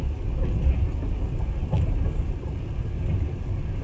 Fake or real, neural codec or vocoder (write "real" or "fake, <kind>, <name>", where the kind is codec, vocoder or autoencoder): real